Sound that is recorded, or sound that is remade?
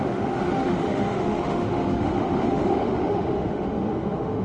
remade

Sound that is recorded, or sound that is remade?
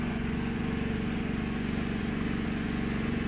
remade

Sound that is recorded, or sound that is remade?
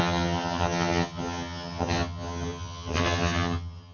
remade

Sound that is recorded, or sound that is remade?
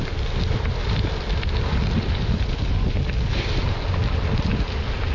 recorded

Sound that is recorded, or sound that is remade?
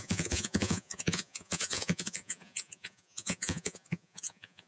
remade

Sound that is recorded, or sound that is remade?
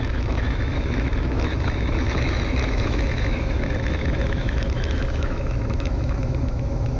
remade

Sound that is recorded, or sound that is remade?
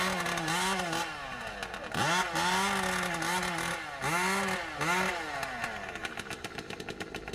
recorded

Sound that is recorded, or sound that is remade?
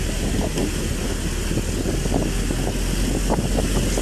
recorded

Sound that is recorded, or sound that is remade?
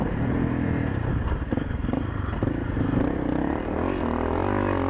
recorded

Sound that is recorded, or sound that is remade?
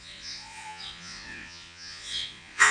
remade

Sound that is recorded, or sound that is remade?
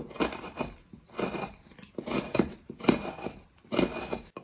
recorded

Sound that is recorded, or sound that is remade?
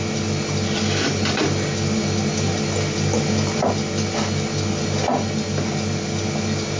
recorded